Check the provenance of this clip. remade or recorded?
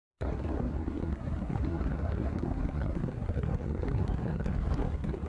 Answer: remade